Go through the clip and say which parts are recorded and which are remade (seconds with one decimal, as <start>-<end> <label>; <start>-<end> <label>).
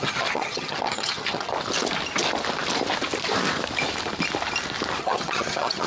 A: 0.0-1.5 remade; 1.5-5.0 recorded; 5.0-5.9 remade